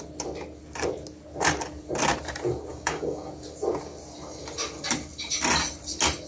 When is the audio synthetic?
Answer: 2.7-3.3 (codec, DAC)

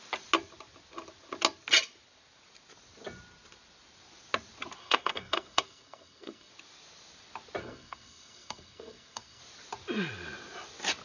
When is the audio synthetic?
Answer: 4.8-6.5 (codec, SNAC); 7.6-9.4

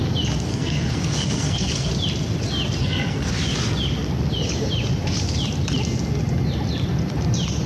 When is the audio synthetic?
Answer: 0.5-1.9 (codec, SNAC); 2.8-3.3

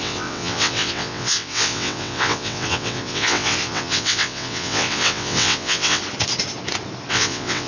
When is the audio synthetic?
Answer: 0.0-6.0 (vocoder, WaveNeXt); 7.1-7.7

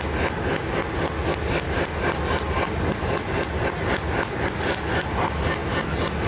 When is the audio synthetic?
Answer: none

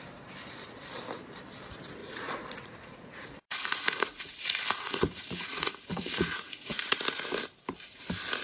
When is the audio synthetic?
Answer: 2.0-7.0 (vocoder, Vocos)